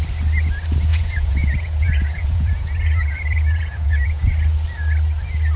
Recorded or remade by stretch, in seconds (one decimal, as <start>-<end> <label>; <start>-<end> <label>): 0.0-0.9 recorded; 0.9-4.3 remade; 4.3-5.6 recorded